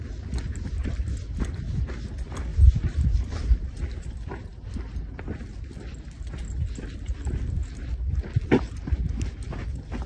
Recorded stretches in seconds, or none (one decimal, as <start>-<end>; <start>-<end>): 0.0-2.5; 4.1-7.6; 8.7-10.1